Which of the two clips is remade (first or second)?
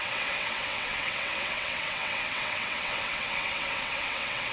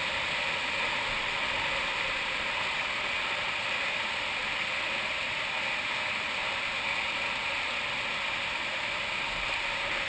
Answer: first